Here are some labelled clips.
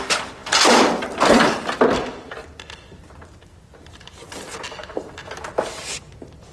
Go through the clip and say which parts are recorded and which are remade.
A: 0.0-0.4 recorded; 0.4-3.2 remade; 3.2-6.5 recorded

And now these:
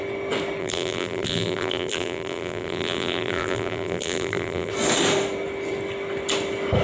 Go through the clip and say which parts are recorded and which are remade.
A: 0.0-0.6 recorded; 0.6-4.7 remade; 4.7-6.8 recorded

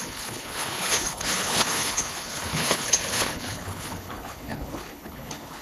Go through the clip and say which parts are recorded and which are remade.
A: 0.0-5.6 remade